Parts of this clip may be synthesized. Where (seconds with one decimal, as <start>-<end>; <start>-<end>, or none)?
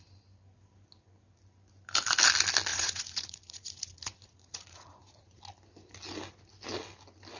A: 2.7-5.4